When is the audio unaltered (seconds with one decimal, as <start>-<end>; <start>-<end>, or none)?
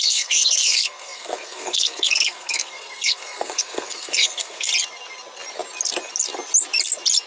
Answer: 4.7-7.3